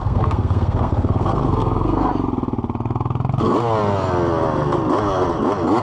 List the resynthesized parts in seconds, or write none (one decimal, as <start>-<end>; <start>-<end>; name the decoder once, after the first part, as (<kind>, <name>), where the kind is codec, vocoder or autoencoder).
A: 0.0-2.1 (codec, SNAC)

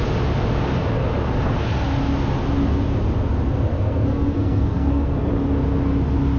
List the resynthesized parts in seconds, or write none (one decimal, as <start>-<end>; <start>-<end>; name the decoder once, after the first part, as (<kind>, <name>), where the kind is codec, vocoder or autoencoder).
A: 3.7-5.3 (codec, SNAC)

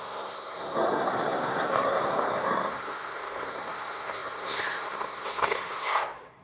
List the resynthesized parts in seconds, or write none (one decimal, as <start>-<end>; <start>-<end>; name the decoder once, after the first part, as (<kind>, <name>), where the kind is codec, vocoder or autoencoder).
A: 0.0-6.4 (codec, SNAC)